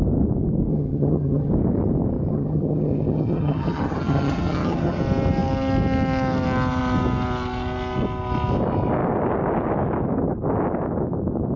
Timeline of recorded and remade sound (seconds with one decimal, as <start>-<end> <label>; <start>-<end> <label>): 0.0-0.7 recorded; 0.7-1.5 remade; 1.5-2.3 recorded; 2.3-5.0 remade; 5.0-11.6 recorded